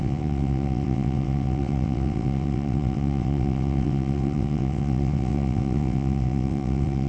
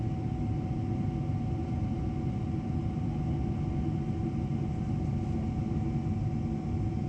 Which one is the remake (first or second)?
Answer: first